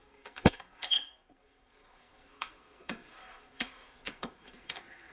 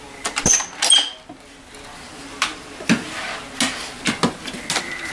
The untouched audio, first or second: second